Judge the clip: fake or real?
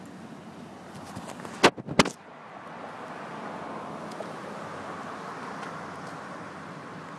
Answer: real